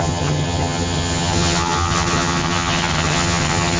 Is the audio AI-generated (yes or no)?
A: yes